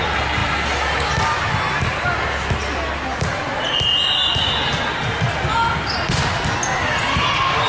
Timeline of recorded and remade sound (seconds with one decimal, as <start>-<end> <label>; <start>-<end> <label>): 0.0-7.7 recorded